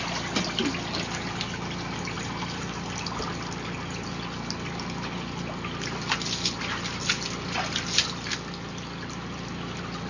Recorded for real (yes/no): yes